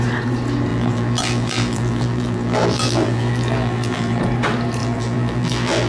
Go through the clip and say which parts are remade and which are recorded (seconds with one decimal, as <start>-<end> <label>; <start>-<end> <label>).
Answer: 0.0-0.7 recorded; 0.7-4.2 remade; 4.2-4.8 recorded; 4.8-5.9 remade